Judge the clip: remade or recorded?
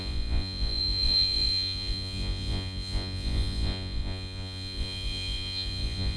remade